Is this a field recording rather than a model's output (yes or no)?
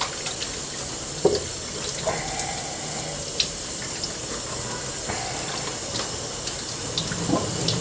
yes